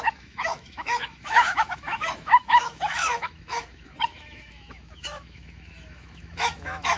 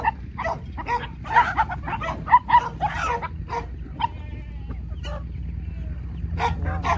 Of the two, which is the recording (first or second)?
second